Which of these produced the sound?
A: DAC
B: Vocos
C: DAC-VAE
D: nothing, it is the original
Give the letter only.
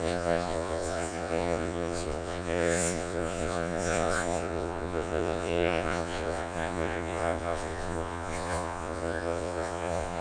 B